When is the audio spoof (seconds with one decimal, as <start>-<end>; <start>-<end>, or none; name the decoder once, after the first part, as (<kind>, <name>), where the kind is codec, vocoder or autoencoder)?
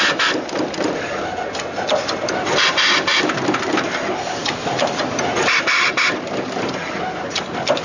none